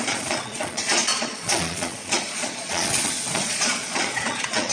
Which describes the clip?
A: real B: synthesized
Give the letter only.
B